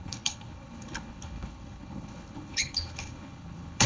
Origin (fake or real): fake